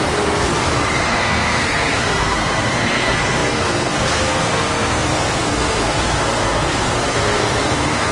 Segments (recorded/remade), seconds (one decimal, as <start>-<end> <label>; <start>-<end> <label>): 0.0-0.5 remade; 0.5-1.0 recorded; 1.0-8.1 remade